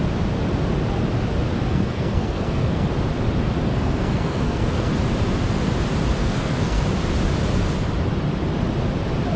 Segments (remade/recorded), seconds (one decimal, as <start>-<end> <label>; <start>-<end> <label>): 0.0-1.7 recorded; 1.7-2.9 remade; 2.9-3.7 recorded; 3.7-4.9 remade; 4.9-6.2 recorded; 6.2-6.8 remade; 6.8-9.4 recorded